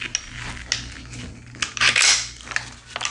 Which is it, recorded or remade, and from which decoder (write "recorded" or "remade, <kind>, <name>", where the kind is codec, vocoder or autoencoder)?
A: recorded